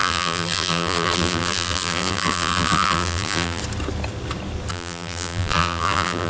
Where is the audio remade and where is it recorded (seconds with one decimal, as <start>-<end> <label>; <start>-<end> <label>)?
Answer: 0.0-3.6 remade; 3.6-4.7 recorded; 4.7-6.3 remade